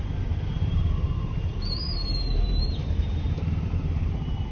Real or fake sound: fake